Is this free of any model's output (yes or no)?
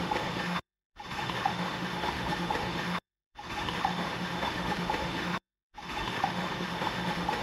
no